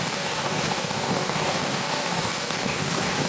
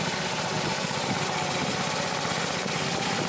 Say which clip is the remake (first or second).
first